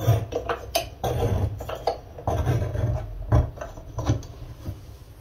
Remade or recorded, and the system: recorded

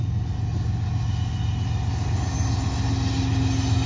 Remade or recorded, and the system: recorded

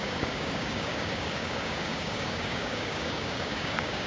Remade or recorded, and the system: remade, codec, DAC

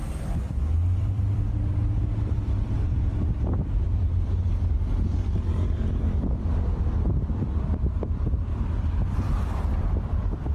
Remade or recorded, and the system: remade, vocoder, BigVGAN v2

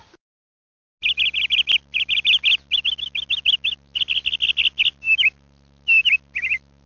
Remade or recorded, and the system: recorded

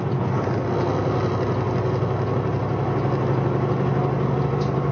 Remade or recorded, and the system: recorded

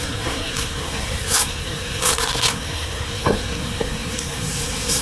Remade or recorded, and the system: remade, codec, SNAC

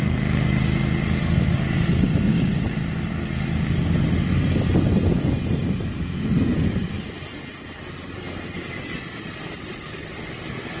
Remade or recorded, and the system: recorded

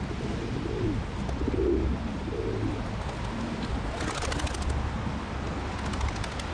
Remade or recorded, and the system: recorded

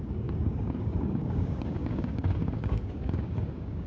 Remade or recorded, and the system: remade, codec, DAC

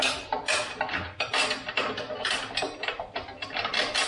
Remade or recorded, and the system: recorded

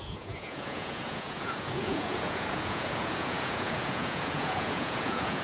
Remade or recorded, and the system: remade, vocoder, Vocos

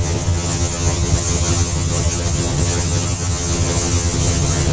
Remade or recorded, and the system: remade, vocoder, HiFi-GAN